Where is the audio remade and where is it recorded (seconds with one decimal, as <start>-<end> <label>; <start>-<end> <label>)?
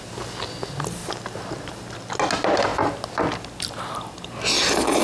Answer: 0.0-5.0 recorded